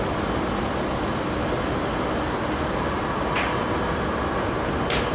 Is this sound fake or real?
real